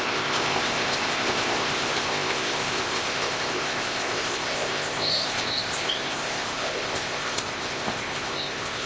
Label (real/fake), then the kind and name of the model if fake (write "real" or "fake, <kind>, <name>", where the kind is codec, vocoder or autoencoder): fake, codec, ZipCodec